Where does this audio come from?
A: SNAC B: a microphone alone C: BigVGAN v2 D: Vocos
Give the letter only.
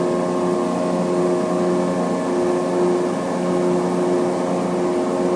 B